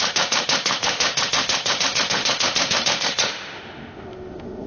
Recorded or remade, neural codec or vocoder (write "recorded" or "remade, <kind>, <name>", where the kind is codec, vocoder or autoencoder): remade, autoencoder, DAC-VAE